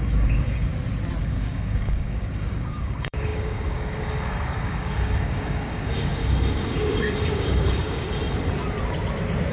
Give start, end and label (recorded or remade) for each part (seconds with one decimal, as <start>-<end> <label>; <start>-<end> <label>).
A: 0.0-0.7 remade; 0.7-1.2 recorded; 1.2-8.2 remade; 8.2-9.5 recorded